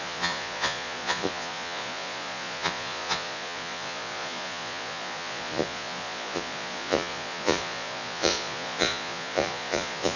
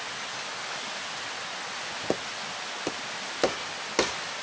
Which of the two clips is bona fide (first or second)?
second